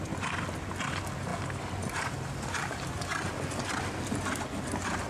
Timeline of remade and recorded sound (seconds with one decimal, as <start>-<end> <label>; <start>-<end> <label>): 0.0-5.1 recorded